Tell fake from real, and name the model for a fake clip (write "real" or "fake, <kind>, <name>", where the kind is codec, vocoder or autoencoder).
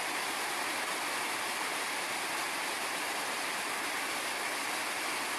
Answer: real